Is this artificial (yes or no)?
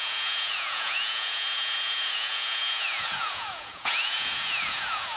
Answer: yes